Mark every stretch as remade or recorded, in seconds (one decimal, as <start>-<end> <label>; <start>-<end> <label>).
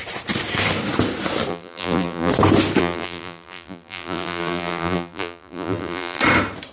0.0-1.5 recorded; 1.5-2.3 remade; 2.3-2.8 recorded; 2.8-6.2 remade; 6.2-6.7 recorded